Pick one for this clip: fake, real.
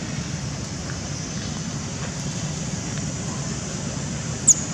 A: real